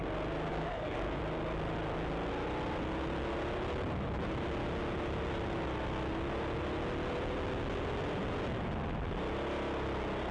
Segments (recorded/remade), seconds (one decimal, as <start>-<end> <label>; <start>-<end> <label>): 0.0-0.5 recorded; 0.5-1.2 remade; 1.2-10.3 recorded